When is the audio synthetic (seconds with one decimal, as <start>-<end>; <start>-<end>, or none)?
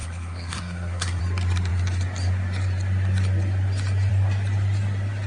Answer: 0.0-1.2